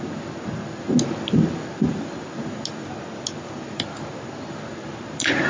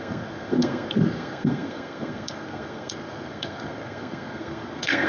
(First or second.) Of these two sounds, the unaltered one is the first